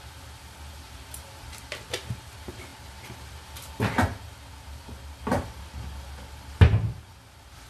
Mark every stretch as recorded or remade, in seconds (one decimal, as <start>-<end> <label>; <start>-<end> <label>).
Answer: 0.0-7.7 recorded